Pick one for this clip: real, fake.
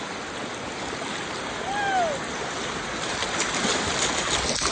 real